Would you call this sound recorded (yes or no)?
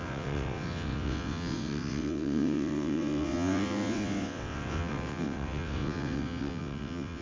no